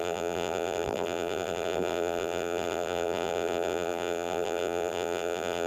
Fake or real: fake